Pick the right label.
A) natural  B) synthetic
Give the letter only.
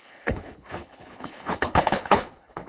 B